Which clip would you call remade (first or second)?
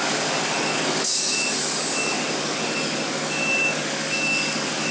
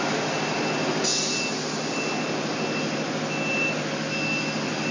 first